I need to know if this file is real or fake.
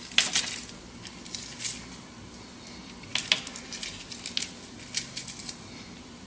real